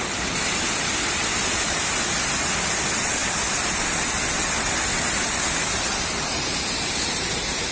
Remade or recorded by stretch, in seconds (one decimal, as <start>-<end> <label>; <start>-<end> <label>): 0.0-7.7 recorded